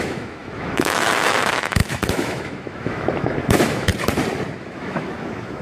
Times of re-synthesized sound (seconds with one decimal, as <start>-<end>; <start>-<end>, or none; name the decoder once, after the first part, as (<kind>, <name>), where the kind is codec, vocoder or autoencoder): 0.0-3.9 (autoencoder, DAC-VAE); 4.6-5.6